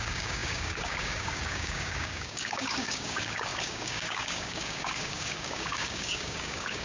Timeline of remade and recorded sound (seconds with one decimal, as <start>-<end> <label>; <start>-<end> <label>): 0.0-6.8 remade